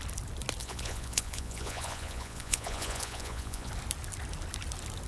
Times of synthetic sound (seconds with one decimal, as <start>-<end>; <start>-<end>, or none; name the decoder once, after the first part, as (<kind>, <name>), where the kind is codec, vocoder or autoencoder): 0.6-3.7 (vocoder, Vocos)